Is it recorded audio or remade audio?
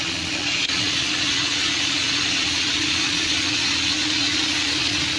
remade